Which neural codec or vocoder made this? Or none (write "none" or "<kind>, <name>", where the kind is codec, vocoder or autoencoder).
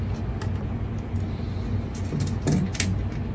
none